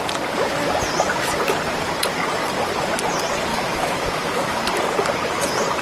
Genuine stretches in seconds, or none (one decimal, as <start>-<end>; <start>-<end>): 0.0-3.5; 4.6-5.8